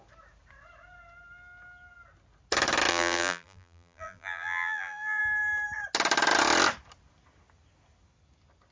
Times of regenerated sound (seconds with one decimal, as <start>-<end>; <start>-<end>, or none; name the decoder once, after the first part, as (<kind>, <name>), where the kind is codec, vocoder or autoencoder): 2.9-5.2 (vocoder, BigVGAN v2)